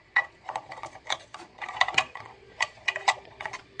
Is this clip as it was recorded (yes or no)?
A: no